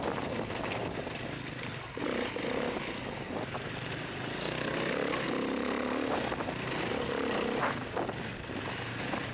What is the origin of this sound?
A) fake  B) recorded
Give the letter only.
B